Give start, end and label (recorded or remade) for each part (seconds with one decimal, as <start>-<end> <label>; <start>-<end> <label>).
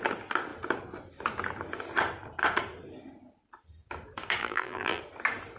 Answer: 0.0-4.4 recorded; 4.4-5.0 remade; 5.0-5.6 recorded